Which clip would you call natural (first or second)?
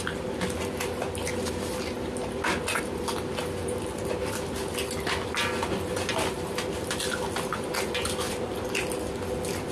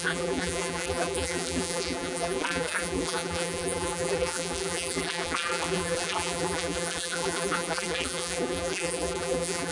first